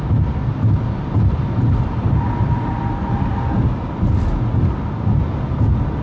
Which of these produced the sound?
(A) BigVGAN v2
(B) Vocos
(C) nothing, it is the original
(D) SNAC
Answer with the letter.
C